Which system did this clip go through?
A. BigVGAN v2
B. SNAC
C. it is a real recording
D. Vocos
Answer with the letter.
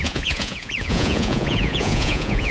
D